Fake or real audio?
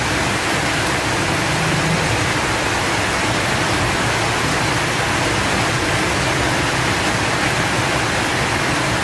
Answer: real